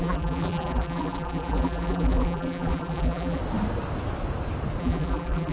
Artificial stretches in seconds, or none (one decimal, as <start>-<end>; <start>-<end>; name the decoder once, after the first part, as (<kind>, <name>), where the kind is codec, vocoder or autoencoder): 0.0-3.4 (vocoder, BigVGAN v2); 4.8-5.5